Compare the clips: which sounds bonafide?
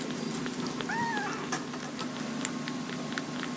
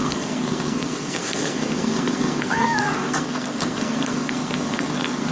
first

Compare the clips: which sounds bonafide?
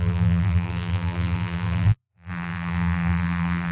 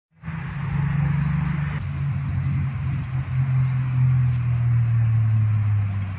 second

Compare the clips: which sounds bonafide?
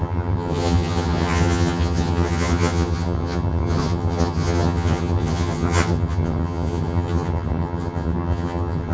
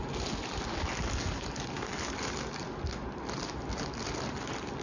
second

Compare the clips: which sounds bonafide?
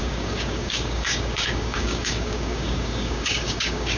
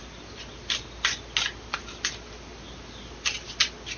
second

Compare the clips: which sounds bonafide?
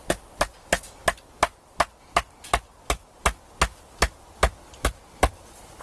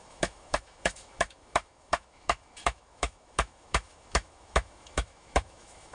first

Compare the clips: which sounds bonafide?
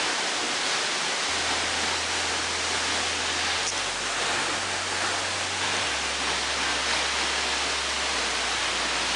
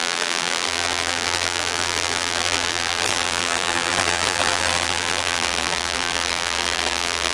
first